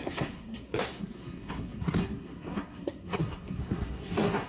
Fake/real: fake